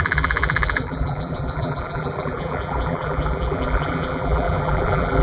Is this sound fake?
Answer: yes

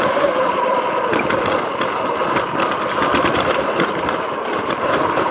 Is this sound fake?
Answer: yes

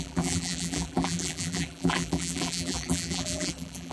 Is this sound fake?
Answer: yes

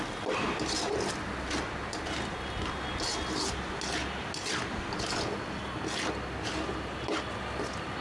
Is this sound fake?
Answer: no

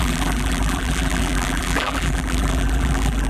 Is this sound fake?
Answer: yes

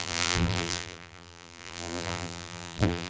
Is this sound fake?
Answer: yes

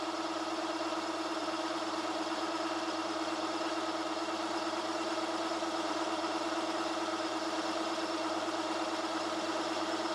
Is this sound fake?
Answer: yes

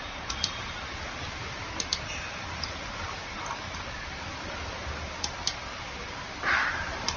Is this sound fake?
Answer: yes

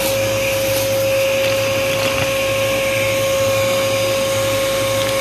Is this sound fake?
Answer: no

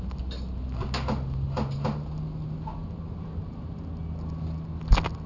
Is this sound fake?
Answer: no